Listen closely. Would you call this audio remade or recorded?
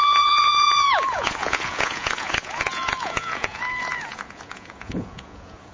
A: remade